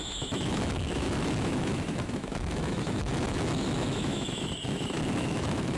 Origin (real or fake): fake